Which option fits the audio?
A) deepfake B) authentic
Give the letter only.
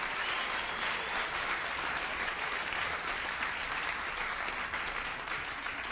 B